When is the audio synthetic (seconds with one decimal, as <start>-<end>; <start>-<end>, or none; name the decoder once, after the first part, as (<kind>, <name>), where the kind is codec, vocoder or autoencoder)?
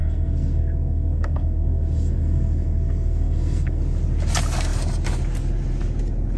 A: 0.0-3.8 (codec, SNAC)